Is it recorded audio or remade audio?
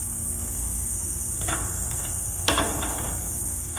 remade